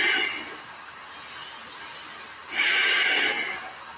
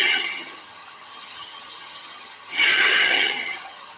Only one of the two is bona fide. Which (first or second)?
first